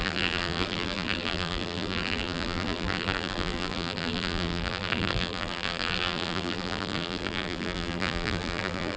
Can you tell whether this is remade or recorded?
remade